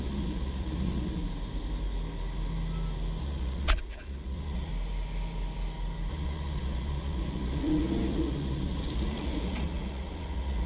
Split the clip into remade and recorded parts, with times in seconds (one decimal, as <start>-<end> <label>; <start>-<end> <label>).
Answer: 0.0-1.2 remade; 1.2-3.2 recorded; 3.2-4.7 remade; 4.7-6.1 recorded; 6.1-10.7 remade